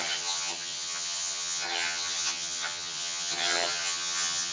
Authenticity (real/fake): fake